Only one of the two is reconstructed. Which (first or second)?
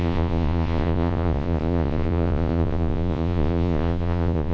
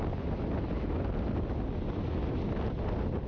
first